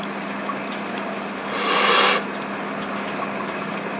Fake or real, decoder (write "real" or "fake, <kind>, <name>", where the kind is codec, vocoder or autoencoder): real